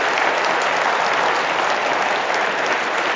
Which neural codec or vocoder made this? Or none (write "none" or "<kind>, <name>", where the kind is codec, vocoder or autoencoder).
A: none